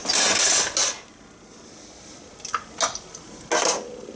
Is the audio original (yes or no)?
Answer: yes